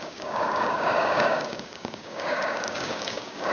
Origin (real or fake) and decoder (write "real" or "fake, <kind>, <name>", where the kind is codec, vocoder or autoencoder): fake, codec, DAC